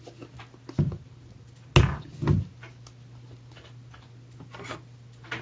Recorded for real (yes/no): yes